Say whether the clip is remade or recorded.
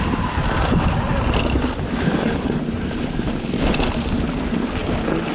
recorded